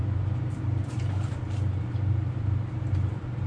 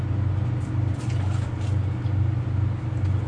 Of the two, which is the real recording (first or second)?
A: second